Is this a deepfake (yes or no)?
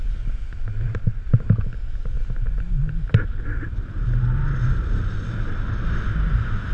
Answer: no